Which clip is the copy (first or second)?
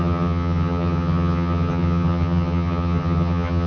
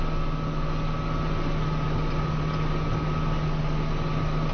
first